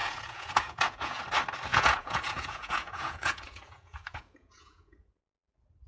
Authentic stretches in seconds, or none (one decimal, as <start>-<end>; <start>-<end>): 1.2-1.7; 5.2-5.9